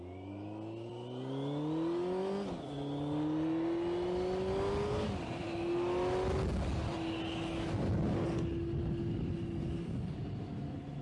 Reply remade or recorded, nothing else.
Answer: recorded